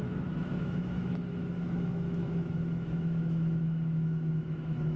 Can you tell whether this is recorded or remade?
remade